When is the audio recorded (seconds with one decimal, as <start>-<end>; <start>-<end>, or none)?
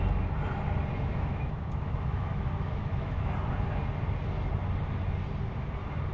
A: 0.0-1.1; 3.3-6.1